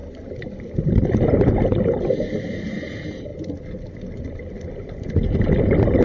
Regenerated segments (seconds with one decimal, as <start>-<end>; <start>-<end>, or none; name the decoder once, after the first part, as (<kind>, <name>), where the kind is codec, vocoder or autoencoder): 0.0-3.3 (vocoder, BigVGAN v2); 3.9-6.0